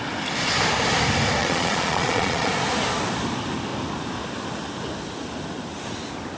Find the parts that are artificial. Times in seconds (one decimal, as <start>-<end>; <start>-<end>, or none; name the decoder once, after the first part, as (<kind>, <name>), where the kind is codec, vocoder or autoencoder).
1.4-2.5 (vocoder, Vocos)